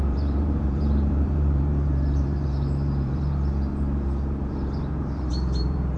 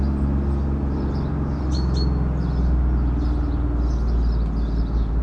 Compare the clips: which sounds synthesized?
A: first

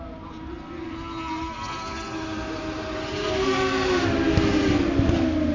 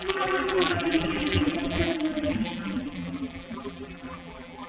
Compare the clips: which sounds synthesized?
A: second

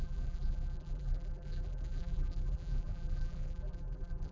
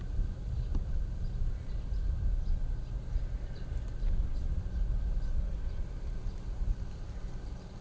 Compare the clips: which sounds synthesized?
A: first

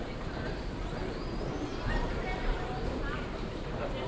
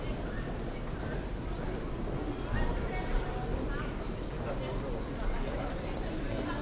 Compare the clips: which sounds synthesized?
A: first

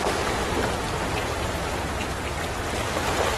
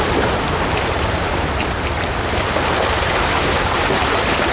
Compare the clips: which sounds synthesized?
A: second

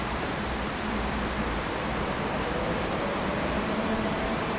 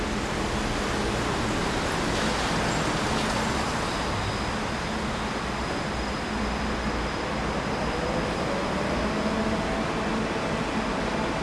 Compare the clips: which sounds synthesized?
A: first